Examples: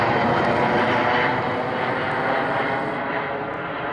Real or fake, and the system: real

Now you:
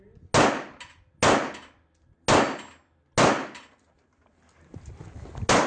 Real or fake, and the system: real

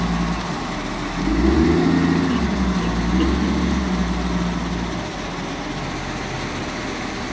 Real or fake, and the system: real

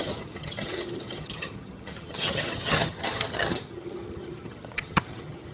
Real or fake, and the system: fake, vocoder, HiFi-GAN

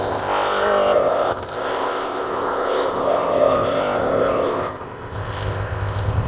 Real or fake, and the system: fake, codec, ZipCodec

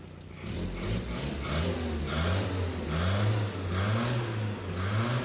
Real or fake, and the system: real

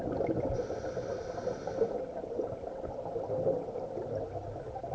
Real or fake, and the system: real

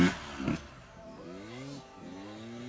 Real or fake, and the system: real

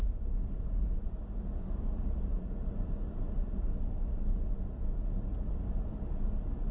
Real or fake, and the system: real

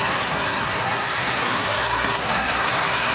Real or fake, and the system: fake, codec, SNAC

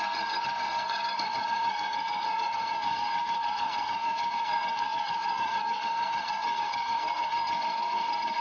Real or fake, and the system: fake, codec, SNAC